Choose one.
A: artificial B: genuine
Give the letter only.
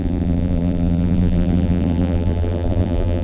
A